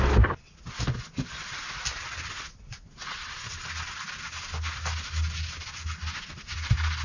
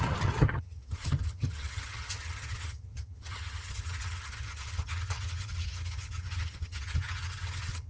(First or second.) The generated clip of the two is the second